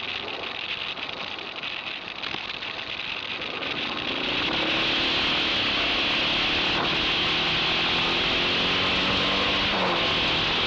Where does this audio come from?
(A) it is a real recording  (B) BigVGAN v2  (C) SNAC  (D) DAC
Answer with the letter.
A